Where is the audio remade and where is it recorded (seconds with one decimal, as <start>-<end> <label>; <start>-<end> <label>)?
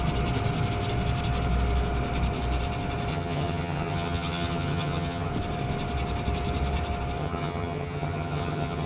0.0-3.1 recorded; 3.1-5.3 remade; 5.3-7.2 recorded; 7.2-8.9 remade